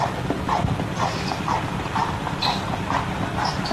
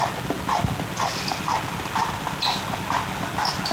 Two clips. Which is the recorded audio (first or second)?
second